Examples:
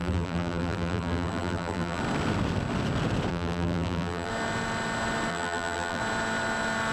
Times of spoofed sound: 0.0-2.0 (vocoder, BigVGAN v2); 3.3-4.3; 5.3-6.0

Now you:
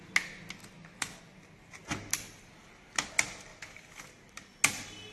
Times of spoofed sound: 0.6-1.2 (vocoder, BigVGAN v2)